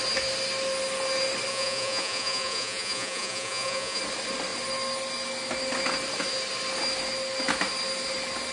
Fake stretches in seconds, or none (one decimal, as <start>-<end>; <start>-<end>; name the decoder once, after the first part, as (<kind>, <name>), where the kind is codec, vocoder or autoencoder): 1.5-4.0 (vocoder, Vocos)